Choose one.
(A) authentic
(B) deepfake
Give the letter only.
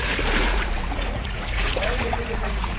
B